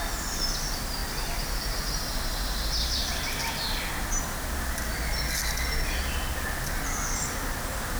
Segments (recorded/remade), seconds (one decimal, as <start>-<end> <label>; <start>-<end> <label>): 0.0-8.0 recorded

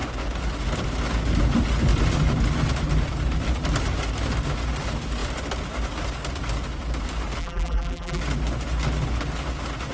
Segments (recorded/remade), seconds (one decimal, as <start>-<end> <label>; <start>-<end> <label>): 0.0-7.4 recorded; 7.4-8.2 remade; 8.2-9.9 recorded

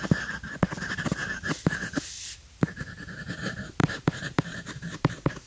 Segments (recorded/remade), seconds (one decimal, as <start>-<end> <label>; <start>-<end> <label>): 0.0-1.2 recorded; 1.2-3.1 remade; 3.1-3.8 recorded; 3.8-5.1 remade; 5.1-5.5 recorded

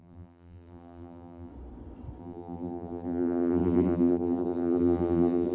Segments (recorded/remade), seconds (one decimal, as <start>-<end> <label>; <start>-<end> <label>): 0.0-1.5 remade; 1.5-2.2 recorded; 2.2-5.5 remade

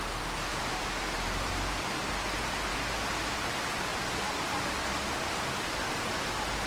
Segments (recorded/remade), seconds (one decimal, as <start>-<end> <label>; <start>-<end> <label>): 0.0-0.5 recorded; 0.5-2.1 remade; 2.1-6.7 recorded

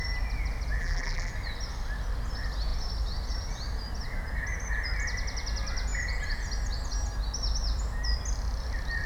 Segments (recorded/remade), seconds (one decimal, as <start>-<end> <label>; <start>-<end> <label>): 0.0-0.8 recorded; 0.8-1.3 remade; 1.3-9.1 recorded

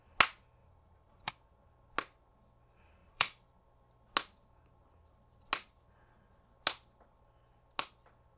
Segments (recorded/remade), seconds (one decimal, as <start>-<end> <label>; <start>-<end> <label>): 0.0-0.6 recorded; 0.6-1.3 remade; 1.3-3.0 recorded; 3.0-3.6 remade; 3.6-8.4 recorded

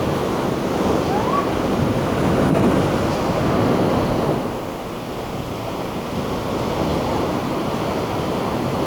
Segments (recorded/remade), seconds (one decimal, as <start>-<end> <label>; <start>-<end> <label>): 0.0-6.9 recorded; 6.9-7.7 remade; 7.7-8.9 recorded